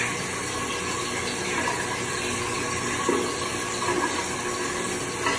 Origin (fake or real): real